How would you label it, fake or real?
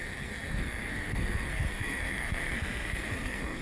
fake